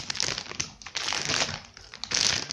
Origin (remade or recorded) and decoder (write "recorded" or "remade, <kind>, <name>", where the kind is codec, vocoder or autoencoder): recorded